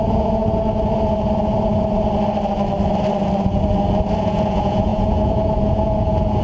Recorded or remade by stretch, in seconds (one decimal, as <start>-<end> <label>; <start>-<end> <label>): 0.0-0.4 remade; 0.4-4.2 recorded; 4.2-6.4 remade